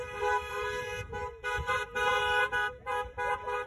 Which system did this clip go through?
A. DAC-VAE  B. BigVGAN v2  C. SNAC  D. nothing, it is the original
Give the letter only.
D